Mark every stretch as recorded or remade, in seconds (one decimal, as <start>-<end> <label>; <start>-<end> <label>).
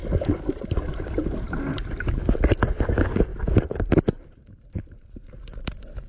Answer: 0.0-1.7 remade; 1.7-2.9 recorded; 2.9-3.3 remade; 3.3-3.9 recorded; 3.9-6.1 remade